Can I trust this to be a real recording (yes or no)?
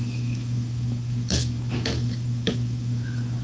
no